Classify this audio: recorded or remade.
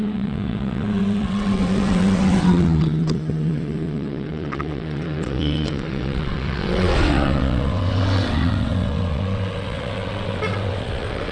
remade